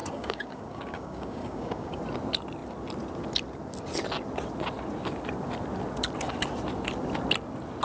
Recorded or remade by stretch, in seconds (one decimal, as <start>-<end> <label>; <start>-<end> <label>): 0.0-2.0 remade; 2.0-7.8 recorded